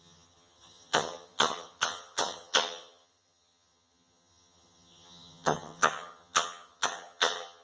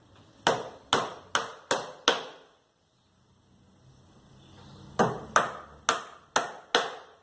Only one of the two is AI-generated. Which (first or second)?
first